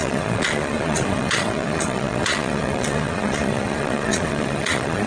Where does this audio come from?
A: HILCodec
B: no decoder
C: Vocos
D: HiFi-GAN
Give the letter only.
C